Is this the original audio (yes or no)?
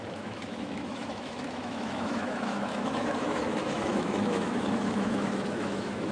no